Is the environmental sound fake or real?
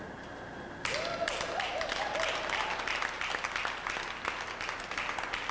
real